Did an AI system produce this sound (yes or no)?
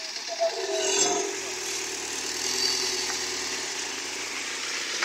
no